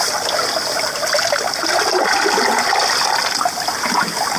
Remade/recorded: recorded